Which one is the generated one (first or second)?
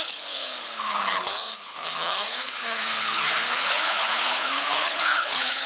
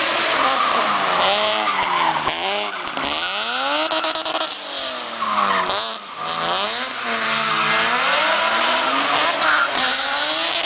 first